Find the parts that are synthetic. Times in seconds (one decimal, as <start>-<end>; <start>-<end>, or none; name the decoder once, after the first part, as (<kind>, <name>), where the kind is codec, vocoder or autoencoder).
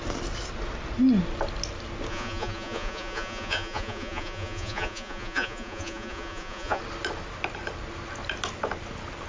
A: 2.1-6.8 (vocoder, Vocos)